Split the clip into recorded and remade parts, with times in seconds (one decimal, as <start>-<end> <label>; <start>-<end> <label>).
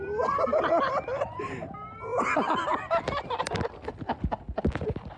0.0-5.2 recorded